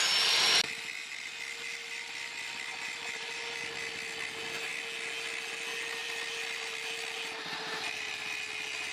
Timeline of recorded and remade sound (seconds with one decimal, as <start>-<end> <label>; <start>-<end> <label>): 0.0-1.8 recorded; 1.8-3.7 remade; 3.7-6.0 recorded; 6.0-8.2 remade; 8.2-8.9 recorded